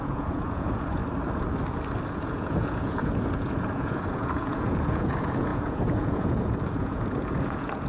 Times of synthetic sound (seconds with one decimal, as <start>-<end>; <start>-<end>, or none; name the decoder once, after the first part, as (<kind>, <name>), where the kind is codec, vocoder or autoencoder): 0.0-1.0 (vocoder, Vocos); 2.1-7.9